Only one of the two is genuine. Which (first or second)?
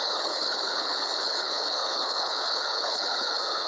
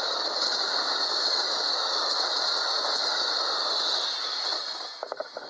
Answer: second